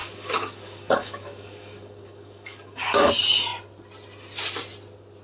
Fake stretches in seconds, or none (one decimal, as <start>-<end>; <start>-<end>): 0.0-3.1